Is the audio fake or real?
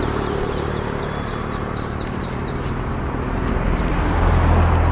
real